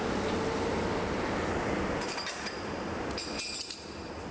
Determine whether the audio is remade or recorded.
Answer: recorded